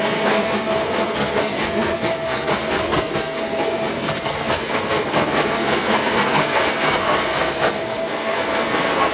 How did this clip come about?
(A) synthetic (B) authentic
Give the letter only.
A